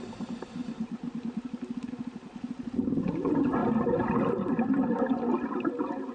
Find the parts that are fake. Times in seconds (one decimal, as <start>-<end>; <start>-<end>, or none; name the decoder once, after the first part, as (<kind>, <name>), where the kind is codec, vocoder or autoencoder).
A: none